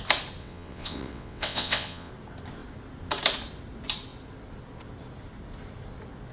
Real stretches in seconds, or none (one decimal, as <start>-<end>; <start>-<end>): 0.0-0.4; 2.1-6.3